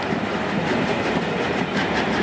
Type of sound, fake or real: real